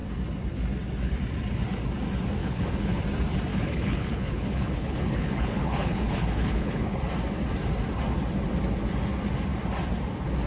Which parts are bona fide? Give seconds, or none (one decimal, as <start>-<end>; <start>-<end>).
0.0-2.4; 3.0-3.5; 7.1-10.5